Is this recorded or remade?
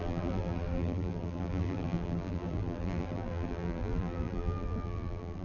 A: remade